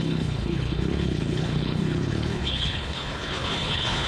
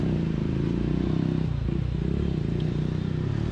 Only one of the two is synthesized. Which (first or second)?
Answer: first